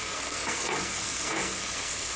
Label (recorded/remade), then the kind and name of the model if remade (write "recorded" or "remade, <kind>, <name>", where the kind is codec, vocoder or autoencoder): remade, codec, SNAC